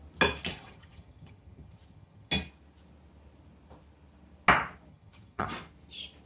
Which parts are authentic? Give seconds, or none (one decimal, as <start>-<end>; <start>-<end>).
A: 0.0-0.5; 2.3-4.9; 5.5-6.3